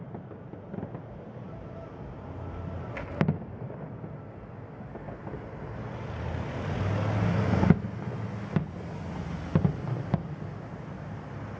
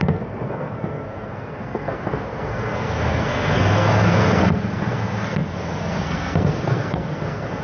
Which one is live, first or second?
first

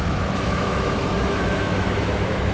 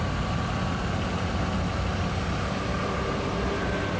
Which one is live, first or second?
second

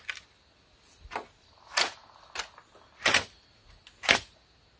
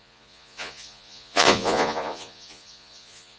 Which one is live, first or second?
first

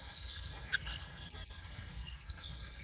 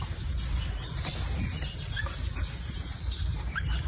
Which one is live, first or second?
second